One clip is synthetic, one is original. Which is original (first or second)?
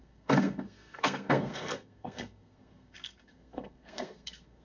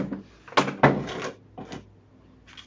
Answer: second